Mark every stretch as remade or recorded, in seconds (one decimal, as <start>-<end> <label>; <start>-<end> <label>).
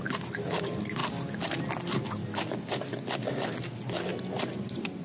0.0-5.0 recorded